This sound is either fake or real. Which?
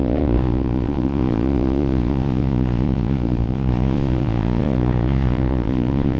fake